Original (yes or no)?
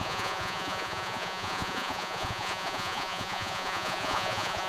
no